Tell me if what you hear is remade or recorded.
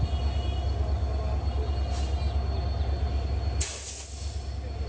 recorded